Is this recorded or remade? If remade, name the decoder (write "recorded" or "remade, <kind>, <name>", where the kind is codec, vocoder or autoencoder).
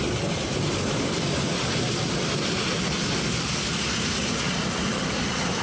recorded